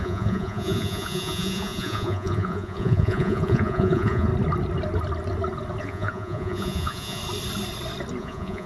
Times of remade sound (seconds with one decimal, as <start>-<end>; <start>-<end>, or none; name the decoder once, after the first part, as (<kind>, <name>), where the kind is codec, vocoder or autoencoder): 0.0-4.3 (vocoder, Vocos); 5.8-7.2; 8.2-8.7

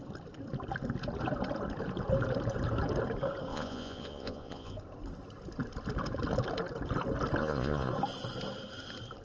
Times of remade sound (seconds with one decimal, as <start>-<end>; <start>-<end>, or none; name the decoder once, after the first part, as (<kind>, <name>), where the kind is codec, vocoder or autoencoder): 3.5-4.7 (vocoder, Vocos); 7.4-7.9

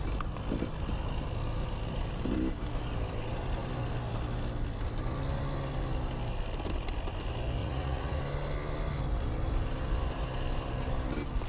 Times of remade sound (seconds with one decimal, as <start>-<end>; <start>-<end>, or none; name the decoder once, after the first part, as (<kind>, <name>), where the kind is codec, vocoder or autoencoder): 7.6-8.2 (vocoder, Vocos)

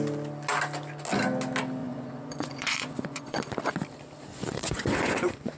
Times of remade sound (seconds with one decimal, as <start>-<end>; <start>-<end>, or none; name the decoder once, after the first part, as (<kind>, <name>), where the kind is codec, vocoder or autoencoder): 1.8-3.4 (vocoder, Vocos); 4.3-5.6

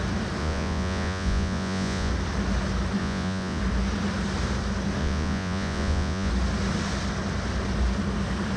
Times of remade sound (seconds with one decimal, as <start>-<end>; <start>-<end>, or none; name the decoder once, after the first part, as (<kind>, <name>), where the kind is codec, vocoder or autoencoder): 0.4-2.1 (vocoder, Vocos); 3.0-3.6; 5.0-6.3

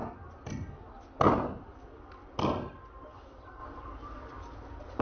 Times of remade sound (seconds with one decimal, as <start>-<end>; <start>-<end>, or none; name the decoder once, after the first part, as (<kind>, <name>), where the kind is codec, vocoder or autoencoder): none